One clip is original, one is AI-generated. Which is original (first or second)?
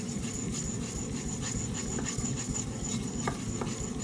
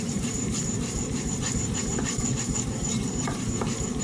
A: first